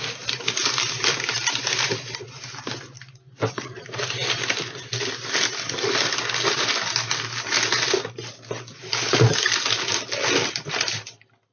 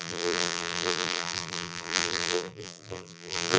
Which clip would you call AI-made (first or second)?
second